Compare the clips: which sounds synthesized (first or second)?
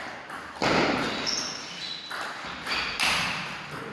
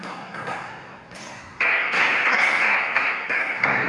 second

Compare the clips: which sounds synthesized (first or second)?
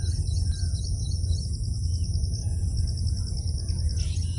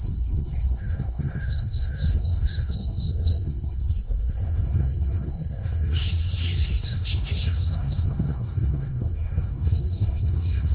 second